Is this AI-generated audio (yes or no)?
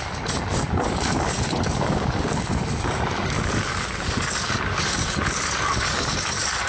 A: yes